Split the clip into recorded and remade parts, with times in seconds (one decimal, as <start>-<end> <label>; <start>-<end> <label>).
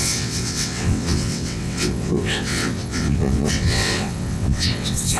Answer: 0.0-5.2 remade